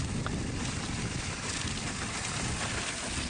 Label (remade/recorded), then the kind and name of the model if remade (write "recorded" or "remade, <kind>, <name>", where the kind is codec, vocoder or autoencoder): recorded